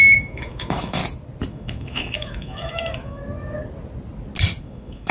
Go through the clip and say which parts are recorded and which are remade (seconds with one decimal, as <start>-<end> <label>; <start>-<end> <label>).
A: 0.0-1.0 remade; 1.0-1.5 recorded; 1.5-3.2 remade; 3.2-4.6 recorded; 4.6-5.1 remade

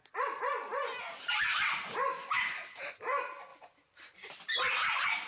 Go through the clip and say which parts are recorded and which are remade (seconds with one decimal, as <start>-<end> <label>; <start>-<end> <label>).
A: 0.0-3.5 recorded; 3.5-4.6 remade; 4.6-5.3 recorded

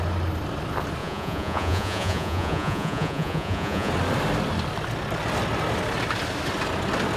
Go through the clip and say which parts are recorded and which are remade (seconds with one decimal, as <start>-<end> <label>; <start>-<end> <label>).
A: 0.0-1.0 recorded; 1.0-3.9 remade; 3.9-7.2 recorded

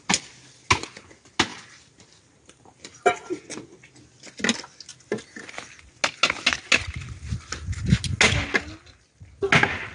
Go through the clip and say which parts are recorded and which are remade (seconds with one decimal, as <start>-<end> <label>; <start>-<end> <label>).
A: 0.0-1.5 recorded; 1.5-3.4 remade; 3.4-9.9 recorded

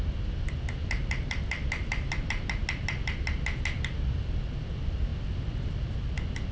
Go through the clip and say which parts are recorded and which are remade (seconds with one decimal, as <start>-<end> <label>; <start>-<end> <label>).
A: 0.0-0.8 recorded; 0.8-2.3 remade; 2.3-6.5 recorded

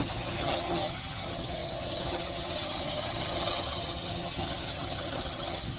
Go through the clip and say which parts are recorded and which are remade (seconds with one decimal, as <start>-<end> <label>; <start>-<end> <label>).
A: 0.0-5.8 remade

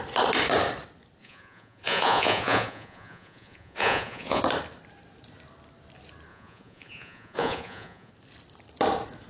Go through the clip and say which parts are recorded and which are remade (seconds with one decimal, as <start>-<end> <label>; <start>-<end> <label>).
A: 0.0-1.2 recorded; 1.2-4.4 remade; 4.4-6.3 recorded; 6.3-8.1 remade; 8.1-9.3 recorded